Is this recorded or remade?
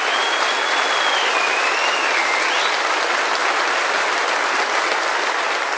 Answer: recorded